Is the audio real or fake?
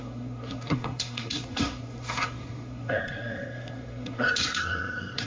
fake